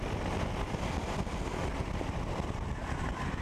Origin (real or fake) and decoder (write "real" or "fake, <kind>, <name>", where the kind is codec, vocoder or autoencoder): real